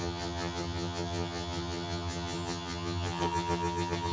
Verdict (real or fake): fake